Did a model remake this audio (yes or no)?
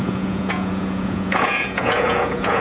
yes